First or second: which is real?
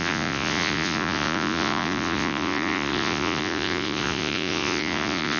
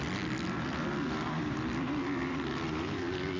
second